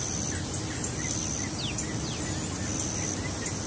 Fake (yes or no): no